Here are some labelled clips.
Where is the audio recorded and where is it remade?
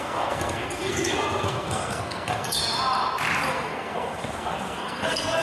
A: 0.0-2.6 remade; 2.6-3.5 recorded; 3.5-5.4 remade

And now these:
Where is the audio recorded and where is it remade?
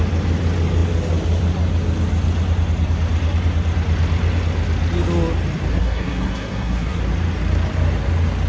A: 0.0-5.7 recorded; 5.7-7.0 remade; 7.0-8.5 recorded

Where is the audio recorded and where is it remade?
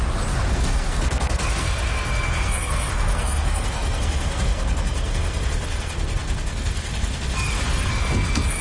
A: 0.0-0.5 recorded; 0.5-8.6 remade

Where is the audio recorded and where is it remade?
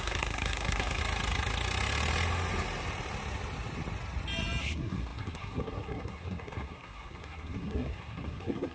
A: 0.0-1.0 remade; 1.0-4.6 recorded; 4.6-8.7 remade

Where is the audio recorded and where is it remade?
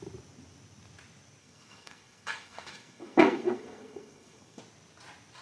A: 0.0-1.4 recorded; 1.4-4.6 remade; 4.6-5.4 recorded